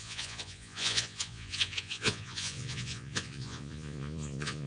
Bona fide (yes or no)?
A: no